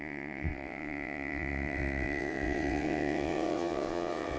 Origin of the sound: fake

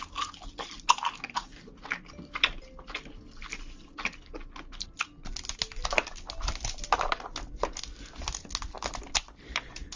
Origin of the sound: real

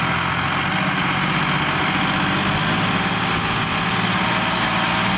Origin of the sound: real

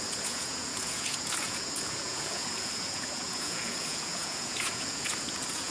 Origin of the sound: fake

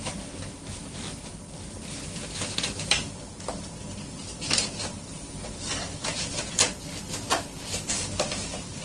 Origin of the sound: real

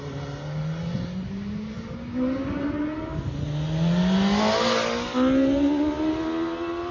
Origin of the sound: real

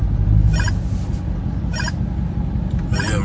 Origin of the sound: real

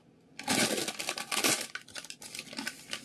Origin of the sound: real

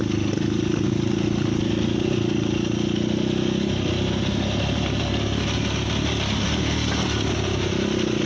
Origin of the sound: real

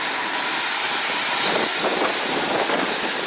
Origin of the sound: real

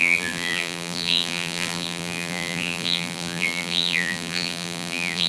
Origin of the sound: fake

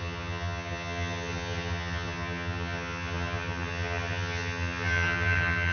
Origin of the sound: fake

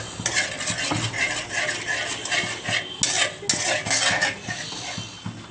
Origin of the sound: real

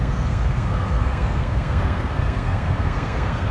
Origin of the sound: fake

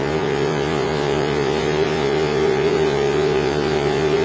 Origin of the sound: fake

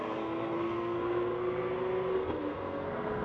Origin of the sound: fake